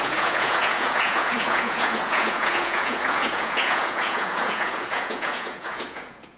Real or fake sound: fake